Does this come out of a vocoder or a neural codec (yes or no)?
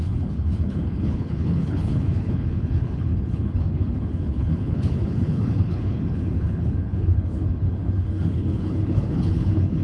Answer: yes